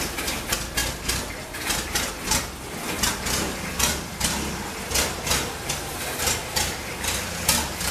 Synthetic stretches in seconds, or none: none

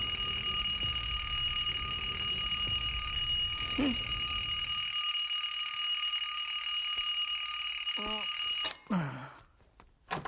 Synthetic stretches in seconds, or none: none

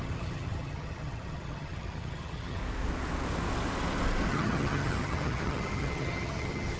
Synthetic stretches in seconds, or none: 0.0-2.6 (vocoder, HiFi-GAN); 4.3-6.8

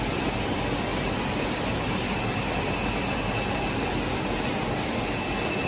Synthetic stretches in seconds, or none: 0.9-2.2 (vocoder, BigVGAN v2)

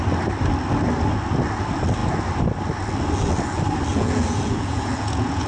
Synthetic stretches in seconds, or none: 3.9-5.5 (vocoder, Vocos)

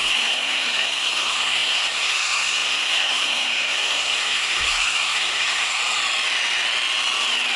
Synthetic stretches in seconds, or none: 0.0-5.8 (codec, SNAC)

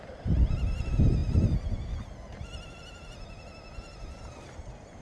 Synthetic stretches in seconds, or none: none